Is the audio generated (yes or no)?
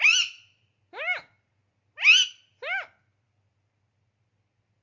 no